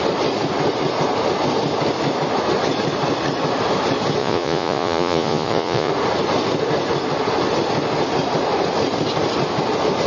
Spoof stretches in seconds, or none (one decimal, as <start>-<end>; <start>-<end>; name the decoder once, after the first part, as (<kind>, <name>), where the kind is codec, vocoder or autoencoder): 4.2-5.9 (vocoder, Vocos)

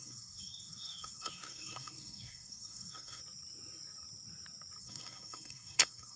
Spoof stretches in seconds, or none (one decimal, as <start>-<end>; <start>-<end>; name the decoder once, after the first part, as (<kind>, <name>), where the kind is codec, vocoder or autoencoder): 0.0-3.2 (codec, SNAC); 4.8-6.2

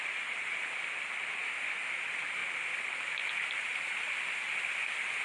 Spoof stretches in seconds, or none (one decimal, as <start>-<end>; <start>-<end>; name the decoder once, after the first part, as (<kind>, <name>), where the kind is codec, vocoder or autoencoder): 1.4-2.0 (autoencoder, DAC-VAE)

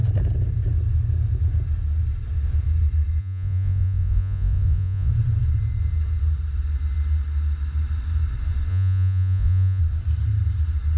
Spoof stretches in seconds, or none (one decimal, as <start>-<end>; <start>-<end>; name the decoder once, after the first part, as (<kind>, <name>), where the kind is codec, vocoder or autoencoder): 3.2-5.1 (vocoder, Vocos); 8.7-9.8